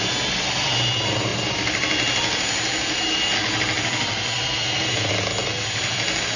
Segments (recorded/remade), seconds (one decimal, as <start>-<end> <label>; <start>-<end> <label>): 0.0-6.4 recorded